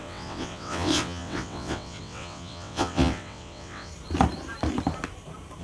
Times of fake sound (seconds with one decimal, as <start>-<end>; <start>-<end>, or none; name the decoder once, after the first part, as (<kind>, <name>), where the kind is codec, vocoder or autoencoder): 0.0-3.9 (vocoder, WaveNeXt)